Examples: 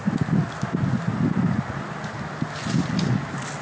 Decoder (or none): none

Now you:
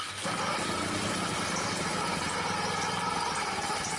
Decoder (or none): none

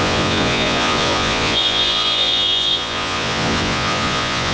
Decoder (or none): vocoder, Vocos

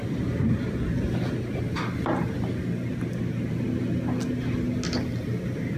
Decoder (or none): none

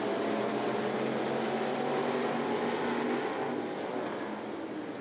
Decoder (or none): none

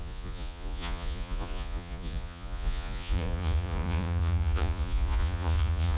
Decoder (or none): vocoder, Vocos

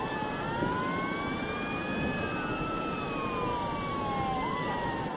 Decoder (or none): none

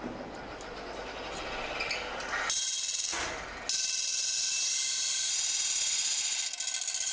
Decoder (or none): none